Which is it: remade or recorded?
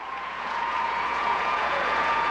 remade